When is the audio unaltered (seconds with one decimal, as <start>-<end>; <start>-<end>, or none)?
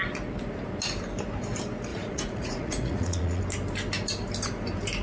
0.0-1.9; 3.4-5.0